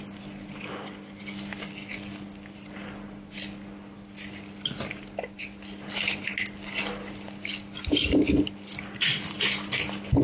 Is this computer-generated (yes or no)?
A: no